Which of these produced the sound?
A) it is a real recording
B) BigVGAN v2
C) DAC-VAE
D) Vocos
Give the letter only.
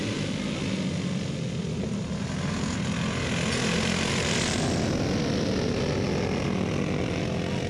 A